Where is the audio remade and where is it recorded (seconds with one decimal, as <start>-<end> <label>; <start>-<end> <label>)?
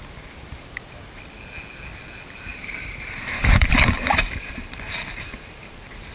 0.0-2.5 recorded; 2.5-6.1 remade